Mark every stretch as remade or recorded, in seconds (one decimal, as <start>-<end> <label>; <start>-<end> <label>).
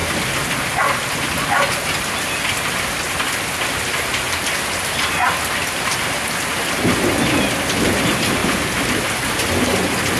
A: 0.0-8.4 recorded; 8.4-9.1 remade; 9.1-10.2 recorded